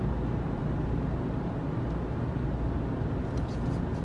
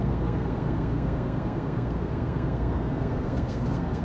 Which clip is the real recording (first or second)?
first